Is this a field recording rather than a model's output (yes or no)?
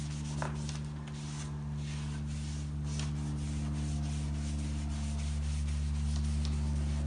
yes